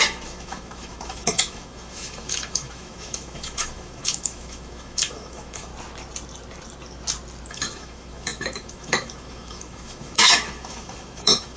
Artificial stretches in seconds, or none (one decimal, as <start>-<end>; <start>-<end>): 0.0-5.7; 7.5-11.6